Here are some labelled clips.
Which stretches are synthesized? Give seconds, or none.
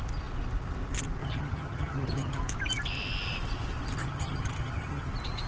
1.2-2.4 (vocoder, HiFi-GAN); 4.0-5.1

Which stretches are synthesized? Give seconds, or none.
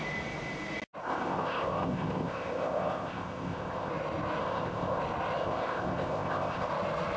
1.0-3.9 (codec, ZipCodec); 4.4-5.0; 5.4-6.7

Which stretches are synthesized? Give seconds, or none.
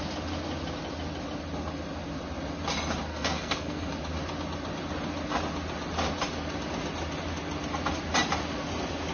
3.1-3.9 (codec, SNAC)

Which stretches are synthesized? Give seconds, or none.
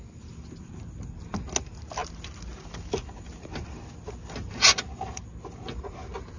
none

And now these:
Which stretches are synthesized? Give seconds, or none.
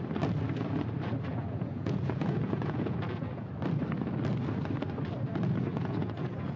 1.3-3.5 (vocoder, Vocos); 5.7-6.6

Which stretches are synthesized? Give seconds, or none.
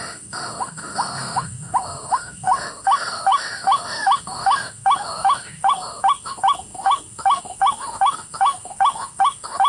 0.0-9.7 (autoencoder, DAC-VAE)